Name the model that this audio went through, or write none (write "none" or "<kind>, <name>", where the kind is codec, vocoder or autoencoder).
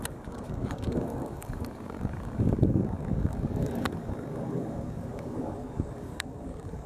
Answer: codec, DAC